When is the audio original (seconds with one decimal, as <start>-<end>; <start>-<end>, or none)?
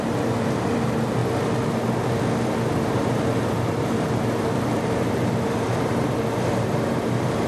1.2-2.8